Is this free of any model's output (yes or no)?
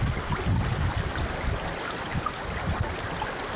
yes